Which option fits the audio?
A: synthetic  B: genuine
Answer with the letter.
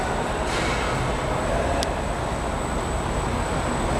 B